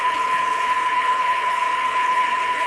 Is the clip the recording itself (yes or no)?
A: no